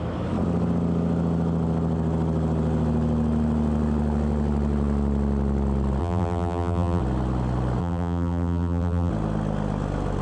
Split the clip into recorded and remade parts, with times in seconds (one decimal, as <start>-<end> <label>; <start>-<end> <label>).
0.0-6.0 recorded; 6.0-7.0 remade; 7.0-7.8 recorded; 7.8-9.1 remade; 9.1-10.2 recorded

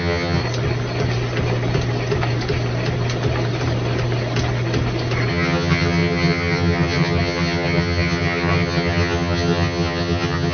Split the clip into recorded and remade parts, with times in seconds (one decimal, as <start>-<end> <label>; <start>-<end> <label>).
0.0-0.4 remade; 0.4-5.3 recorded; 5.3-10.5 remade

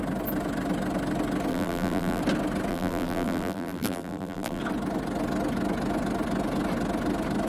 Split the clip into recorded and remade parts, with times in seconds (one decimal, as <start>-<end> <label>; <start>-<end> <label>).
0.0-1.5 recorded; 1.5-2.2 remade; 2.2-2.7 recorded; 2.7-4.6 remade; 4.6-7.5 recorded